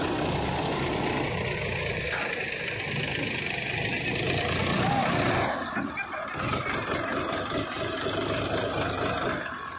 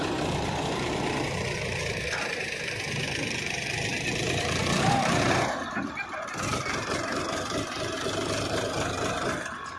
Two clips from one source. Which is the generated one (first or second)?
second